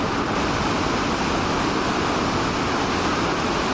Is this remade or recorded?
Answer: recorded